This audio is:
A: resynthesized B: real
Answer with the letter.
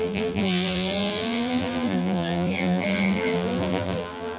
A